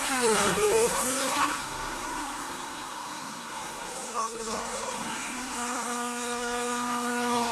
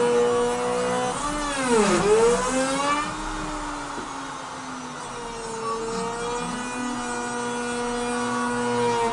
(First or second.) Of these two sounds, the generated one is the first